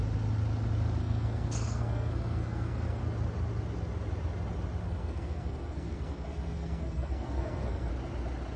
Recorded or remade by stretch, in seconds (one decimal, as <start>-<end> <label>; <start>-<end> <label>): 0.0-1.0 recorded; 1.0-3.0 remade; 3.0-4.8 recorded; 4.8-7.9 remade; 7.9-8.6 recorded